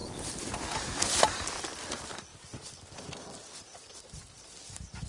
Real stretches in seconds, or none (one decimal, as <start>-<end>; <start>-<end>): 1.5-2.3; 4.2-5.1